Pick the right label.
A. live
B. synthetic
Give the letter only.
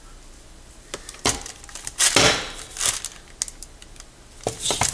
A